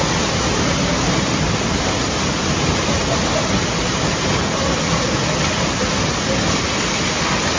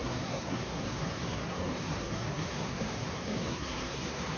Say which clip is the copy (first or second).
second